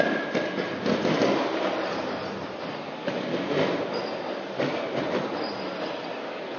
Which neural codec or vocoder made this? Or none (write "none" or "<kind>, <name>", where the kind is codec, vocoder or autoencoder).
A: none